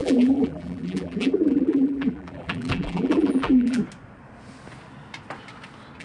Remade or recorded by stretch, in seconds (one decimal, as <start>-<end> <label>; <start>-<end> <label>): 0.0-3.8 remade; 3.8-6.0 recorded